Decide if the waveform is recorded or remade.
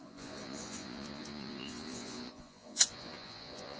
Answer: remade